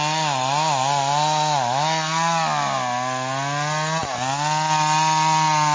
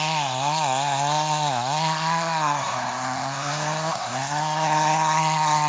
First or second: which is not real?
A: second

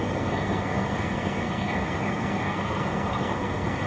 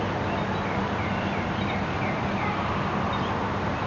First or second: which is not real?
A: first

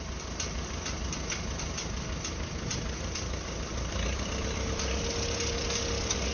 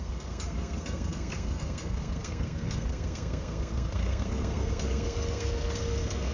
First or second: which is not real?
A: second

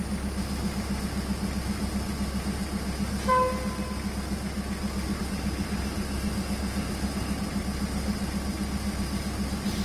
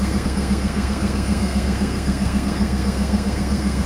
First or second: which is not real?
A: second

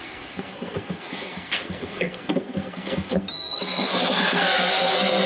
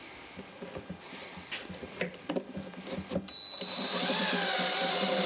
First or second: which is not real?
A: first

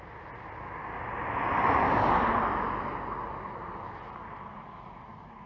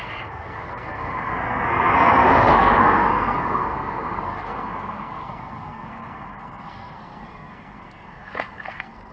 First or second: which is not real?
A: second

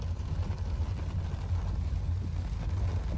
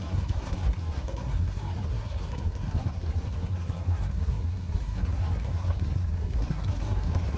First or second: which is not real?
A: second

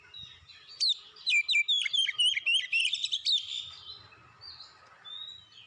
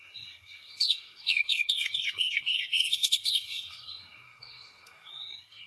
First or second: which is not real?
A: second